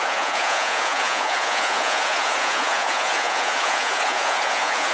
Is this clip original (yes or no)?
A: no